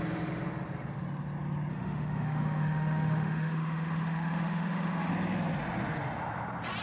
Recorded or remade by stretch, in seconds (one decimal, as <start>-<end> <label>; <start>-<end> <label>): 0.0-1.7 recorded; 1.7-5.1 remade; 5.1-6.8 recorded